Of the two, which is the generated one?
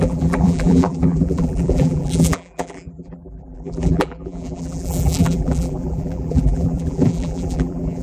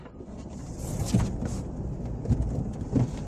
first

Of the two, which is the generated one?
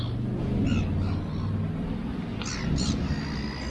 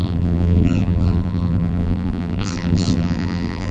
second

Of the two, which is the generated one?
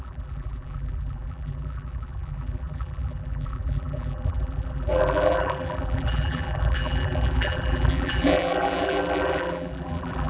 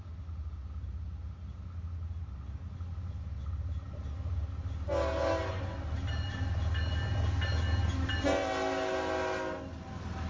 first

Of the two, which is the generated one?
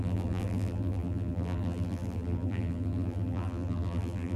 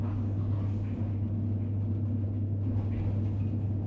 first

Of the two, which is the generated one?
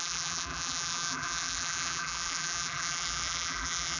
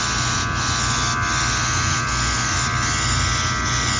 first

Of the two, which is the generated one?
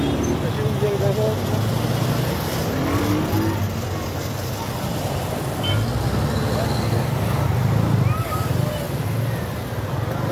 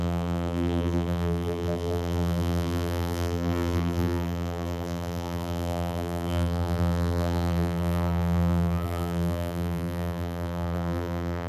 second